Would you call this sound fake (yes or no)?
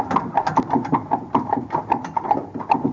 no